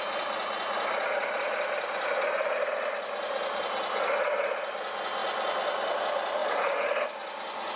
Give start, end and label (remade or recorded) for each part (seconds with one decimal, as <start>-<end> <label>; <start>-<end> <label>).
0.0-5.2 recorded; 5.2-6.0 remade; 6.0-7.8 recorded